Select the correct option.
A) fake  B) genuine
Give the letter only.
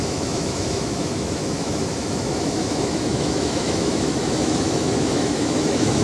A